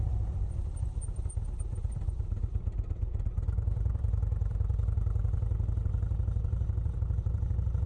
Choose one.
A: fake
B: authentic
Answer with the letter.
A